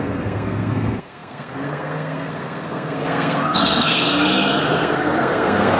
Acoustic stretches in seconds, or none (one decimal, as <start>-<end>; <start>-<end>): none